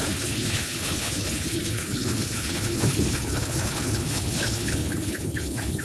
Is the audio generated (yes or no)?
yes